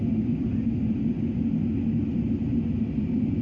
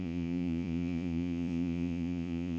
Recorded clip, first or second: first